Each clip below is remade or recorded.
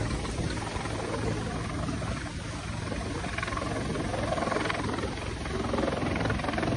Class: recorded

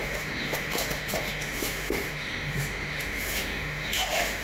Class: remade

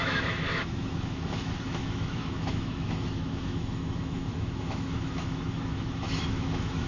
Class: remade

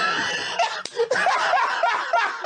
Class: recorded